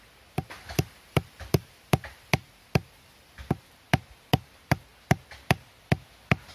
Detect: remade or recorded recorded